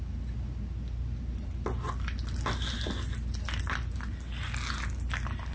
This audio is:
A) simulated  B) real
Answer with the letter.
B